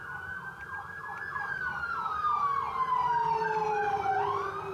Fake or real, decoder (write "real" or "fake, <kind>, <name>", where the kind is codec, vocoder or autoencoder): real